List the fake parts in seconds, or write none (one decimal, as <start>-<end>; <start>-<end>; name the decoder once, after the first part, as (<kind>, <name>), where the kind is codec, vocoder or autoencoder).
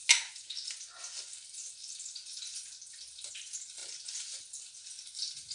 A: 3.3-3.8 (vocoder, BigVGAN v2); 4.4-5.5